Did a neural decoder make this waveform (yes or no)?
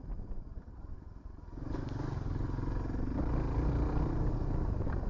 no